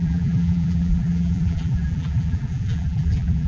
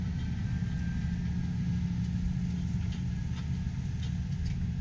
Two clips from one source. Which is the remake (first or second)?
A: first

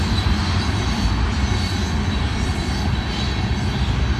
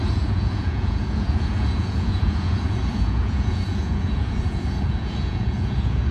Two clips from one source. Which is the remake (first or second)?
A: second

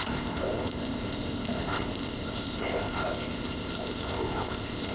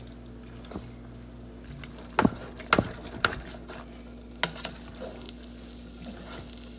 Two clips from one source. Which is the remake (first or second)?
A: first